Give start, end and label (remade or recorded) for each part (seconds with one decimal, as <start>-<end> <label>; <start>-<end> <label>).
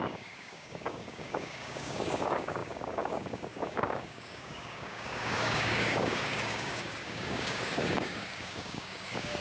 0.0-9.4 remade